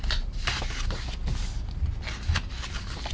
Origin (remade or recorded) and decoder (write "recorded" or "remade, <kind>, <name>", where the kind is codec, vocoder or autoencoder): recorded